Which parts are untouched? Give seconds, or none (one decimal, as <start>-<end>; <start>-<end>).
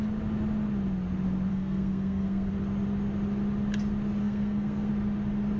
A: 0.0-1.5; 2.5-4.2; 4.9-5.6